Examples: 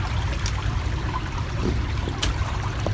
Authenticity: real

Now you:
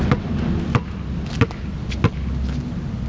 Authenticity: real